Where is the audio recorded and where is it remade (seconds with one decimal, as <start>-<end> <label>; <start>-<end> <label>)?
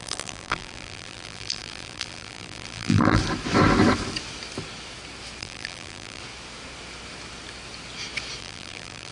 0.0-3.2 remade; 3.2-5.4 recorded; 5.4-6.2 remade; 6.2-8.4 recorded; 8.4-9.1 remade